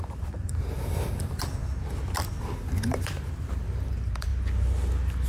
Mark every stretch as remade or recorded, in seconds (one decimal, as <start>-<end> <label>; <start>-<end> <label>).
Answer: 0.0-1.6 remade; 1.6-2.7 recorded; 2.7-4.3 remade; 4.3-5.3 recorded